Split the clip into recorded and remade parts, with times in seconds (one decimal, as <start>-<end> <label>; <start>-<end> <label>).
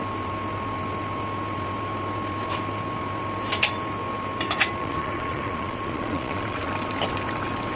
0.0-4.8 recorded; 4.8-6.7 remade; 6.7-7.8 recorded